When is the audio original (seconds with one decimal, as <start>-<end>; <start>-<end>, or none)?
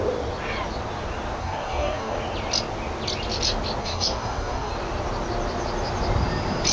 0.0-1.4; 2.2-3.8; 4.7-6.7